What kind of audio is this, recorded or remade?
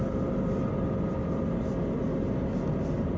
recorded